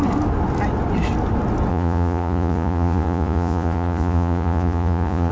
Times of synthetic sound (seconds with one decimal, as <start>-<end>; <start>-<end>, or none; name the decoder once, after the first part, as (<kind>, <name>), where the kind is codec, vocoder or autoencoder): 1.7-5.3 (vocoder, Vocos)